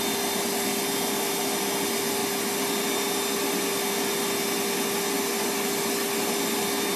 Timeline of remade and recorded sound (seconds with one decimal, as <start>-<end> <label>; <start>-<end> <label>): 0.0-7.0 recorded